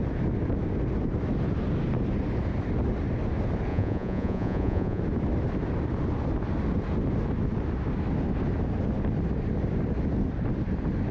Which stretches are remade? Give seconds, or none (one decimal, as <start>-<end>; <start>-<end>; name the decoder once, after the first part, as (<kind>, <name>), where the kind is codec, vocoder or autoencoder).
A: 3.7-5.0 (vocoder, Vocos)